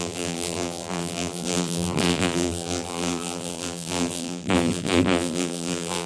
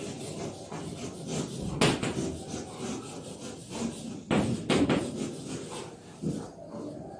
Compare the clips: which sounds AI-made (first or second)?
first